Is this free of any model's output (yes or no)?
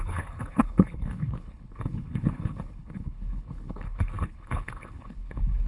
no